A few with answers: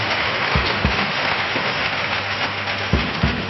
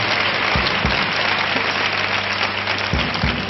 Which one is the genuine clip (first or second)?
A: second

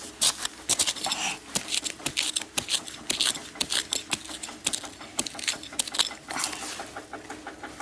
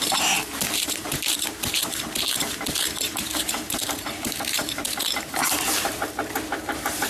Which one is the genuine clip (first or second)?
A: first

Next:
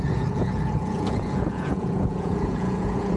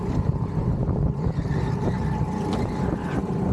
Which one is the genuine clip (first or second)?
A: second